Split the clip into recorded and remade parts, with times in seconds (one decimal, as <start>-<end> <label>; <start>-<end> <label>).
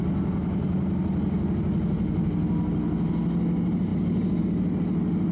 0.0-5.3 recorded